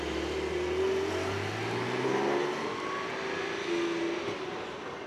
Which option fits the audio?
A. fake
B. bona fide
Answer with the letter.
B